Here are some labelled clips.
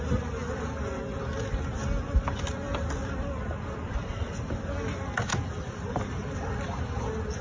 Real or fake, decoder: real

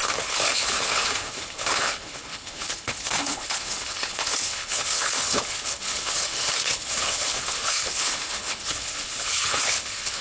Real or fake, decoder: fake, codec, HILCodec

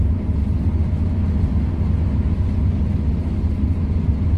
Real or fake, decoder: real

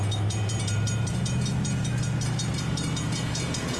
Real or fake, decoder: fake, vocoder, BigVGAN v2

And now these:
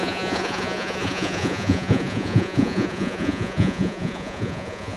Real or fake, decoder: fake, vocoder, Vocos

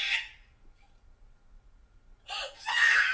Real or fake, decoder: fake, vocoder, Vocos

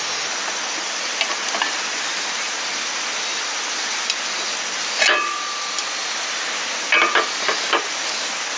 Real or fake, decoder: real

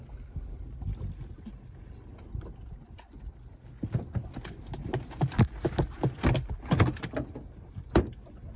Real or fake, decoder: real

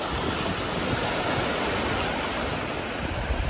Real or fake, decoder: real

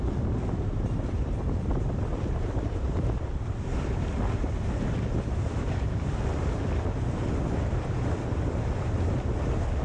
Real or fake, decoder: fake, vocoder, BigVGAN v2